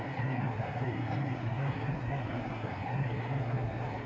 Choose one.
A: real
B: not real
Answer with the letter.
B